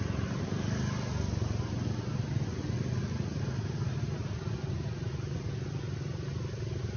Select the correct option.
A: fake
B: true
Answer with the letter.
B